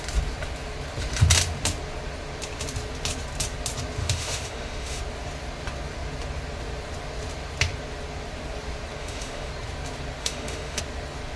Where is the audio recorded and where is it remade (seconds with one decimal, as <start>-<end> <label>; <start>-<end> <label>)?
0.0-4.0 recorded; 4.0-5.0 remade; 5.0-9.0 recorded; 9.0-9.5 remade; 9.5-10.2 recorded; 10.2-10.8 remade; 10.8-11.4 recorded